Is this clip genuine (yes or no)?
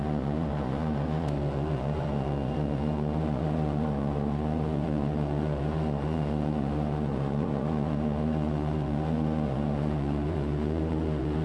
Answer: no